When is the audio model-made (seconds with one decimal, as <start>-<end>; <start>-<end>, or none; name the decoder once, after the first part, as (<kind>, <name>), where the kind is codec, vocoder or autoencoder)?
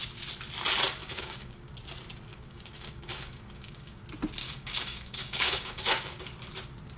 1.0-1.7 (codec, DAC); 2.3-4.0; 4.4-6.2